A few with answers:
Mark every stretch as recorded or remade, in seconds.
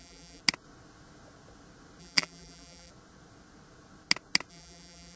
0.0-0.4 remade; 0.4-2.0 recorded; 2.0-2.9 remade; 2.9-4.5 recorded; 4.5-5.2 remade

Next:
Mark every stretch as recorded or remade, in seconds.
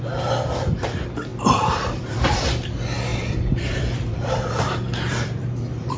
0.0-1.3 recorded; 1.3-2.5 remade; 2.5-3.1 recorded; 3.1-6.0 remade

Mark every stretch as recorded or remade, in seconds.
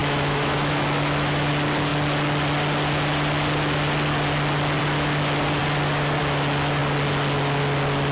0.0-1.5 remade; 1.5-8.1 recorded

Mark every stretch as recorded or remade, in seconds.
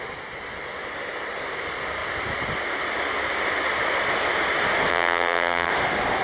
0.0-4.9 recorded; 4.9-5.7 remade; 5.7-6.2 recorded